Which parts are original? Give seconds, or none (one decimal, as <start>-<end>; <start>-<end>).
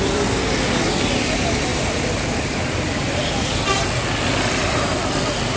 0.0-1.7; 5.0-5.6